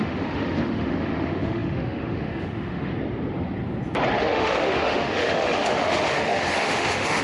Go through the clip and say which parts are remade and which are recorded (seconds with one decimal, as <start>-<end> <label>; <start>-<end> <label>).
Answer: 0.0-2.9 remade; 2.9-4.2 recorded; 4.2-7.2 remade